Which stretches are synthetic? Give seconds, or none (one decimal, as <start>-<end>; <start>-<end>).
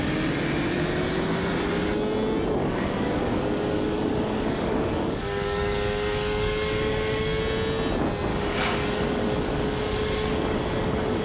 2.6-7.4; 8.3-11.2